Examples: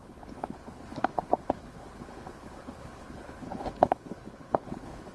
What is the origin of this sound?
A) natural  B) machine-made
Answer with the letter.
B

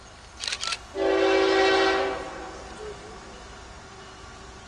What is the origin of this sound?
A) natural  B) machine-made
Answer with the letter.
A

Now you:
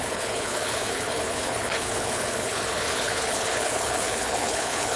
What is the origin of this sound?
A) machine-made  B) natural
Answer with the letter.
A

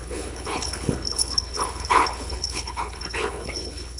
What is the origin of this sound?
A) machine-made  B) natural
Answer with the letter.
A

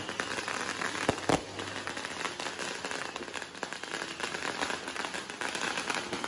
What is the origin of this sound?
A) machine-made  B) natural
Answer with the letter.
B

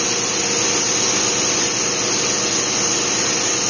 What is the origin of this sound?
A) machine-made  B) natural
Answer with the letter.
B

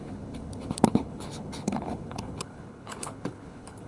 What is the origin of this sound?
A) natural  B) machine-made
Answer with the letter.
B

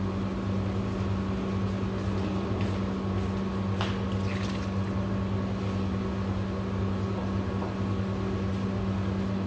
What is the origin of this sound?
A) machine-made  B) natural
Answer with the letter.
B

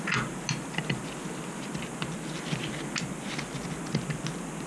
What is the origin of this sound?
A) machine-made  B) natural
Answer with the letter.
B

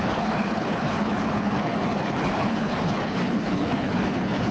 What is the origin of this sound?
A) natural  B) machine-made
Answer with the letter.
B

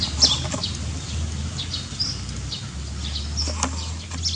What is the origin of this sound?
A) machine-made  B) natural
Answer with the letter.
B